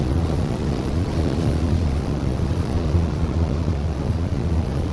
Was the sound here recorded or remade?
remade